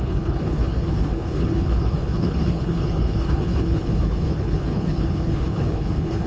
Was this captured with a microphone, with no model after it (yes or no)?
no